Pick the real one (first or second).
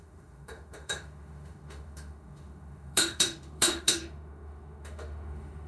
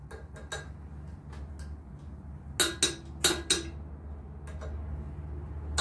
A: second